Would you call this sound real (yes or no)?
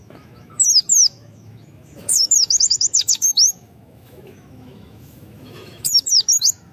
no